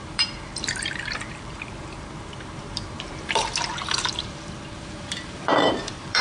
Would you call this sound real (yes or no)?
no